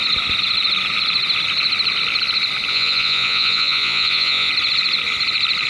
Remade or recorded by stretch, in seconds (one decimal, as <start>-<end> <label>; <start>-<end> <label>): 0.0-2.7 recorded; 2.7-4.5 remade; 4.5-5.7 recorded